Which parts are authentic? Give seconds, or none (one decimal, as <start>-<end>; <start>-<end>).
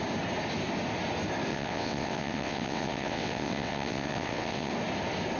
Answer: 0.0-1.5; 4.7-5.4